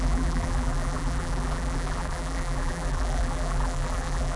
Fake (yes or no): yes